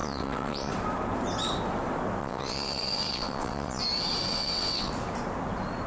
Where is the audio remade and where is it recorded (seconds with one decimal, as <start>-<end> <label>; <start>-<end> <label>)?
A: 0.0-0.7 remade; 0.7-2.2 recorded; 2.2-3.8 remade; 3.8-4.3 recorded; 4.3-4.9 remade; 4.9-5.9 recorded

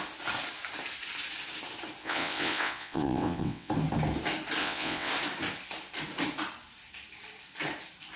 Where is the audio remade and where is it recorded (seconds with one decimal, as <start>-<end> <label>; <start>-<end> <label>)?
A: 0.0-2.0 recorded; 2.0-3.7 remade; 3.7-4.6 recorded; 4.6-5.1 remade; 5.1-8.2 recorded